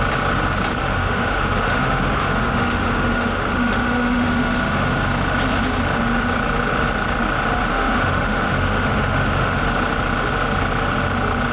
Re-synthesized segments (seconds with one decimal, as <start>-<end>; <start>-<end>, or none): 0.8-5.0; 7.7-9.6